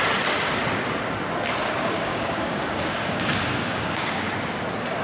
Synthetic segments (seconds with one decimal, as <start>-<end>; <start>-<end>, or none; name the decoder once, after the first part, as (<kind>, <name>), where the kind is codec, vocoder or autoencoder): 2.1-4.3 (codec, DAC)

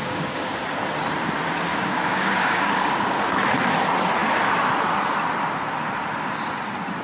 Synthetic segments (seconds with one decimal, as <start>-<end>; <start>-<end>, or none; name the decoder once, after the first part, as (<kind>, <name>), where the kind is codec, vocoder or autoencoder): 0.0-0.6 (codec, DAC); 1.7-3.2

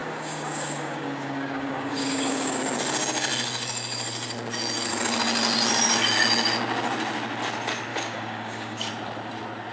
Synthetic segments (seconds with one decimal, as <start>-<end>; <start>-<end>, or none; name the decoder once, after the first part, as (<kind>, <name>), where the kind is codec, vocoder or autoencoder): 0.0-2.6 (codec, DAC); 7.9-8.9

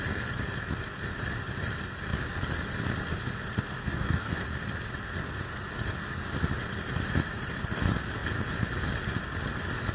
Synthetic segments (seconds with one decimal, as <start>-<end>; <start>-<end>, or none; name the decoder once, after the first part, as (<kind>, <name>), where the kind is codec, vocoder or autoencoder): 3.8-4.3 (codec, DAC)

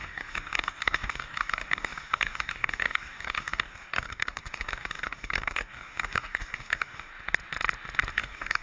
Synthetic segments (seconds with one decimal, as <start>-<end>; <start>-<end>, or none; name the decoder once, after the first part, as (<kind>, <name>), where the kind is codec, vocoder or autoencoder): 0.0-7.1 (codec, DAC); 8.1-8.6